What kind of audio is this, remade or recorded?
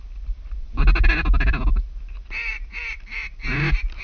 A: recorded